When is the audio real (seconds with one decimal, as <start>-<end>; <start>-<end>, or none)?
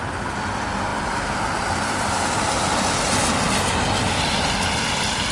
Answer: 0.0-5.3